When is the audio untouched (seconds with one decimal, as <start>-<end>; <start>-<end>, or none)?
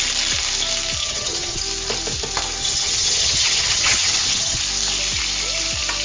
0.0-1.0; 1.6-2.6; 4.6-6.0